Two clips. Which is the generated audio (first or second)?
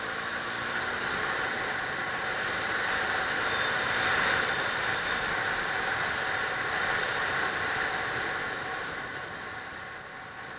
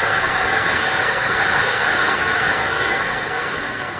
second